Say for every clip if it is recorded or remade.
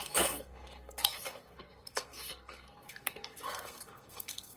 remade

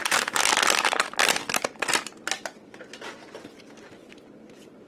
recorded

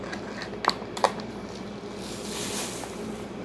recorded